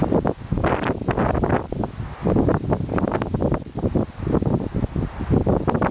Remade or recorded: recorded